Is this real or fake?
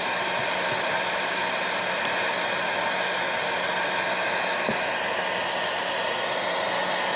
real